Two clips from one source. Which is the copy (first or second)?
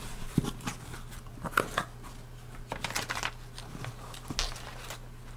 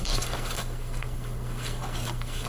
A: second